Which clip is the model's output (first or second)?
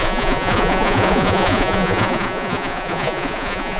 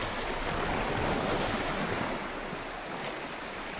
first